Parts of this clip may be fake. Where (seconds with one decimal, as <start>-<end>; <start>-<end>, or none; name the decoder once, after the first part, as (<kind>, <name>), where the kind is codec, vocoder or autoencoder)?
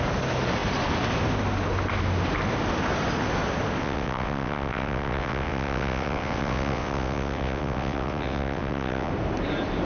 3.8-9.1 (vocoder, WaveNeXt)